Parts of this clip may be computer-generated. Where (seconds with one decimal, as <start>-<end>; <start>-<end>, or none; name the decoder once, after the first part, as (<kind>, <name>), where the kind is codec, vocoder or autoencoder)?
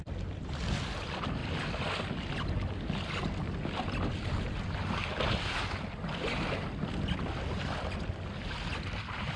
none